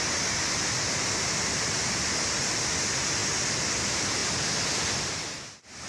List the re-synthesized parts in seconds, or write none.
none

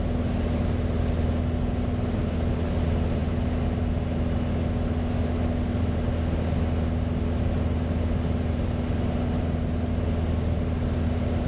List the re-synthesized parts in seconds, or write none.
none

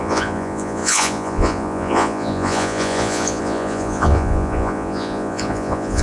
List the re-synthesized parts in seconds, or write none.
0.0-6.0 (vocoder, Vocos)